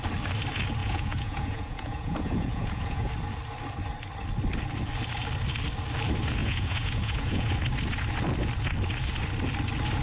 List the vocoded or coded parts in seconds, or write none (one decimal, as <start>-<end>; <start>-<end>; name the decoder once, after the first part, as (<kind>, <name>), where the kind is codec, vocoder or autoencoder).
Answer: 0.8-3.1 (vocoder, Vocos); 6.4-7.5